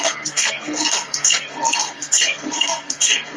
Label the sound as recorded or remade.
remade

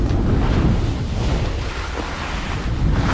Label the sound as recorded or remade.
recorded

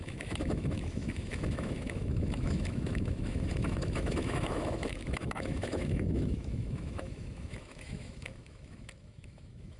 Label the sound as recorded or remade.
remade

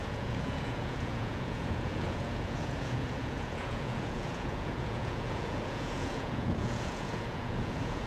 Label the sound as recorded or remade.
remade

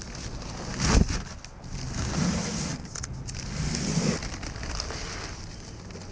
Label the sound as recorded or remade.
recorded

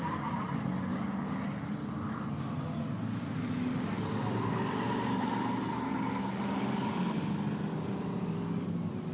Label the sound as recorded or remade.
recorded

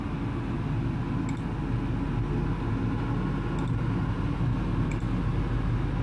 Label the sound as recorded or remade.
recorded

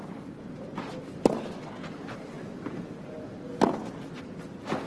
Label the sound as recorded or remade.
recorded